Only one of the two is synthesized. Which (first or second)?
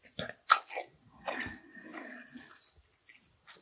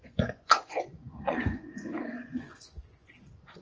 second